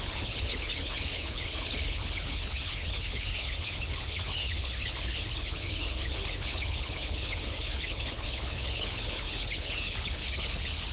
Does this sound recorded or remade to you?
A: remade